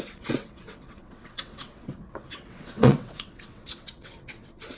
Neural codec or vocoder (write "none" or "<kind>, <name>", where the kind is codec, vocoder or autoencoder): vocoder, WaveNeXt